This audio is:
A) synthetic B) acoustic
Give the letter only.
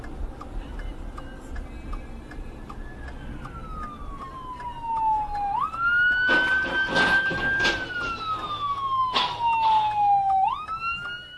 B